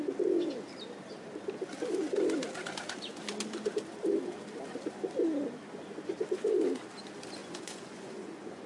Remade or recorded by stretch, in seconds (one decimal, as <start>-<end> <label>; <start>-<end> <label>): 0.0-7.4 recorded; 7.4-8.7 remade

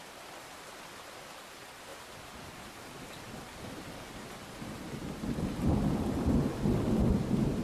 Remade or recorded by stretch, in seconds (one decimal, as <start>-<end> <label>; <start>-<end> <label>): 0.0-1.9 recorded; 1.9-3.1 remade; 3.1-7.6 recorded

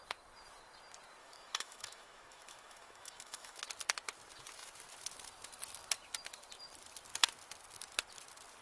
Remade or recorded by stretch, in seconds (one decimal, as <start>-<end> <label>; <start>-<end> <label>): 0.0-1.2 recorded; 1.2-3.6 remade; 3.6-8.6 recorded